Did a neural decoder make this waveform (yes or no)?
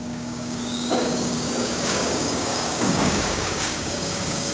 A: yes